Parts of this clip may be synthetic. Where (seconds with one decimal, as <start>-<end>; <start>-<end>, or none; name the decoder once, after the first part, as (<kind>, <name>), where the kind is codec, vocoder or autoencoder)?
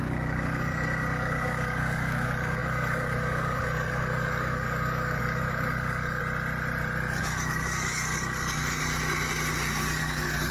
0.0-6.2 (codec, DAC); 7.2-8.8; 10.0-10.5